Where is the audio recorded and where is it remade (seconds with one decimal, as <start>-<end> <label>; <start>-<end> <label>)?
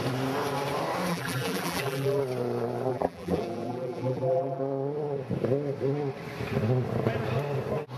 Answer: 0.0-1.1 recorded; 1.1-2.2 remade; 2.2-2.9 recorded; 2.9-4.6 remade; 4.6-8.0 recorded